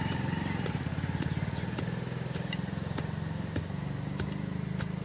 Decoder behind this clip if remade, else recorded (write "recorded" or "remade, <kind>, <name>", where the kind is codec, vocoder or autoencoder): recorded